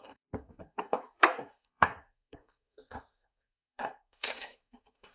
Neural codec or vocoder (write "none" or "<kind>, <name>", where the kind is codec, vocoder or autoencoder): codec, SNAC